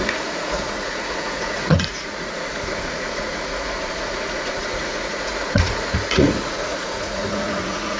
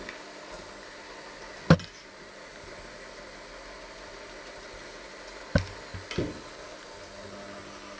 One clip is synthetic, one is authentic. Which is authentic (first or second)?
second